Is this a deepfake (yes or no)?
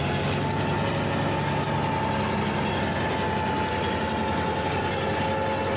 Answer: no